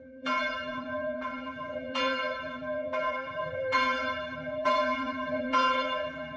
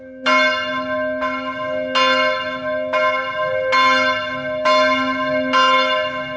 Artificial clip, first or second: first